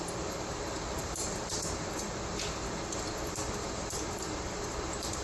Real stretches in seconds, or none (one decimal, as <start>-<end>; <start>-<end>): 0.0-5.2